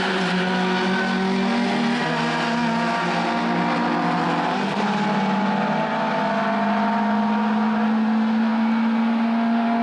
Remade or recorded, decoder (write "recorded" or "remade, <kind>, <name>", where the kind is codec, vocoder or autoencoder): recorded